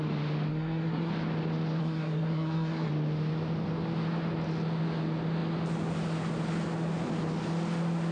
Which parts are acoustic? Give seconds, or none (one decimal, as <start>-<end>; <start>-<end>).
0.0-0.5; 1.1-1.8; 2.9-8.1